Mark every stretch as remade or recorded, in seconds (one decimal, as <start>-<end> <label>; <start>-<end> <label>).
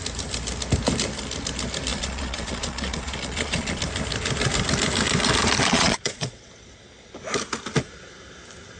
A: 0.0-1.9 recorded; 1.9-3.8 remade; 3.8-5.7 recorded; 5.7-6.5 remade; 6.5-8.8 recorded